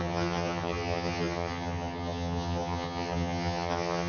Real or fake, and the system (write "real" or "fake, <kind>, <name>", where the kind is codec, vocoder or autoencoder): fake, vocoder, HiFi-GAN